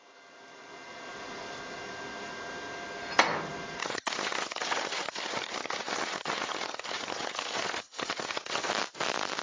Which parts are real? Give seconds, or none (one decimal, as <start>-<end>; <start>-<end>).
0.0-3.8; 8.7-9.4